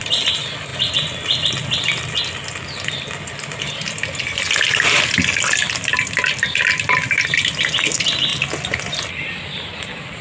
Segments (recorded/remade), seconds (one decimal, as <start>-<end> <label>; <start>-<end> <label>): 0.0-0.7 remade; 0.7-5.5 recorded; 5.5-10.2 remade